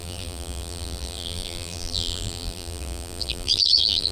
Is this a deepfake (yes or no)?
yes